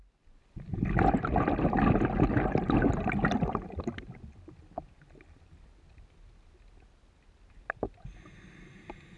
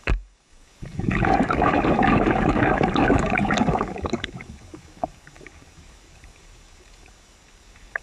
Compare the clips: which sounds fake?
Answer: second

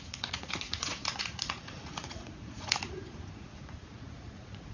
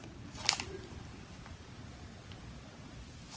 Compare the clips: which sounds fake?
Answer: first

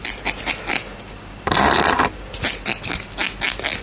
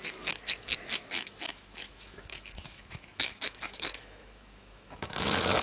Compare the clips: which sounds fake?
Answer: second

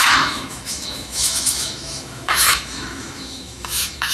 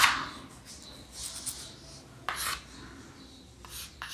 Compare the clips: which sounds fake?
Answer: first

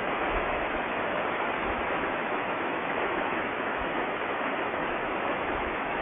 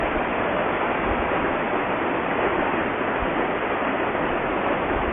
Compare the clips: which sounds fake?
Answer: first